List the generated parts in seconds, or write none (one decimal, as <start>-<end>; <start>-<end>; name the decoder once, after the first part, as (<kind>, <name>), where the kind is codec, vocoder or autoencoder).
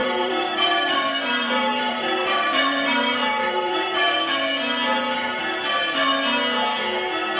0.0-4.3 (vocoder, BigVGAN v2)